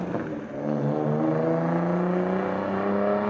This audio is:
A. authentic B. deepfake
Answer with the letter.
A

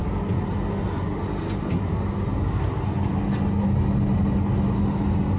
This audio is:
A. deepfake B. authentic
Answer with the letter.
B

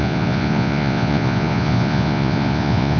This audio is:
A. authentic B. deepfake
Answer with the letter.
B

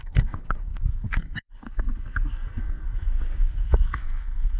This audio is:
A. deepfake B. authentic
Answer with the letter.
A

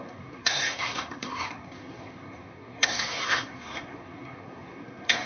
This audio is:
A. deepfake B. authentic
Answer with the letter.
A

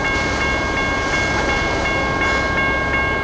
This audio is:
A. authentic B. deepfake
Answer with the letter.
A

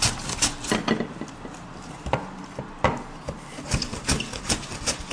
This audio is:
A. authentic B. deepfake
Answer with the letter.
A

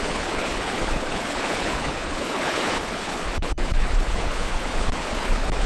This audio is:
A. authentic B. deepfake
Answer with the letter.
B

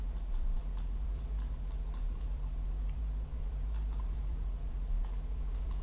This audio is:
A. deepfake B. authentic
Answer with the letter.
A